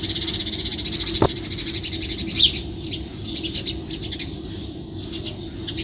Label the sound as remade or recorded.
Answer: recorded